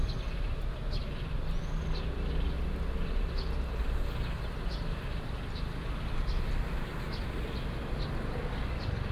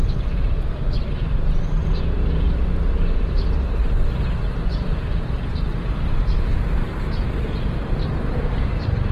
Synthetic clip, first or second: second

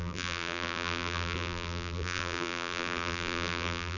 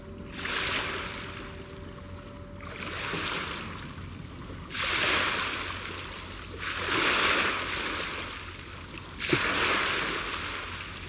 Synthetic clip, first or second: first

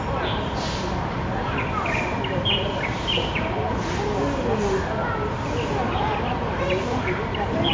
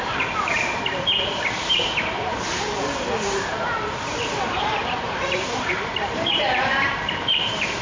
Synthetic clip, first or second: second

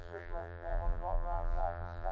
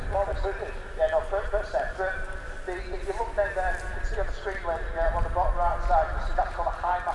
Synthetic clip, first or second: first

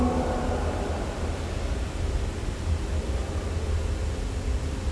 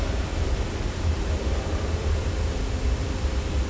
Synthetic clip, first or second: second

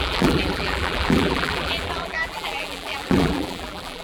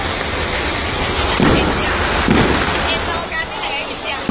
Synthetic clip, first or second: first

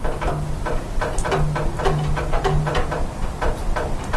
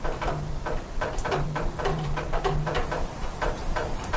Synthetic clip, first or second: second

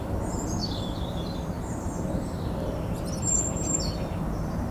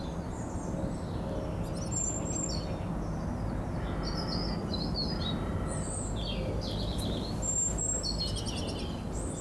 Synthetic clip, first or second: first